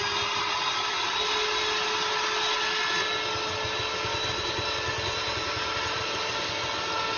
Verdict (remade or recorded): recorded